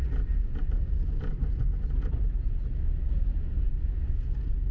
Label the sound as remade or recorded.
recorded